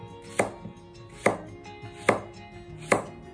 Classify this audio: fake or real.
real